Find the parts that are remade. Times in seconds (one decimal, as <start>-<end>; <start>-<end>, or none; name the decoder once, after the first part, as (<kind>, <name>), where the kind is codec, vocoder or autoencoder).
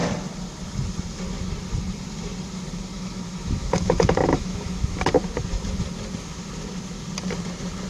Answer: 2.9-5.0 (autoencoder, DAC-VAE)